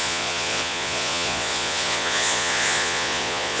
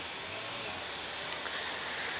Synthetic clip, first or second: first